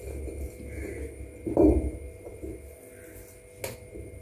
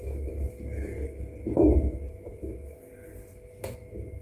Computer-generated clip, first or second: second